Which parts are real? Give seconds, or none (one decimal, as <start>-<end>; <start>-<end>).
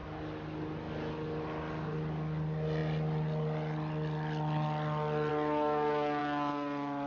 0.0-7.1